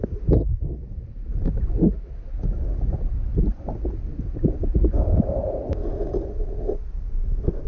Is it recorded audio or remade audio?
recorded